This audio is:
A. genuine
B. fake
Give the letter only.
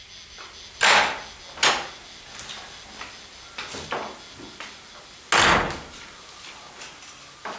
A